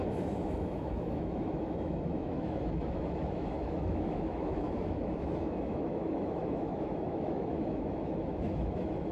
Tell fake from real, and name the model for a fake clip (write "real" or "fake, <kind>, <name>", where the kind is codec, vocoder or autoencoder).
fake, autoencoder, DAC-VAE